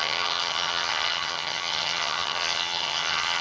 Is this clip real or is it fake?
fake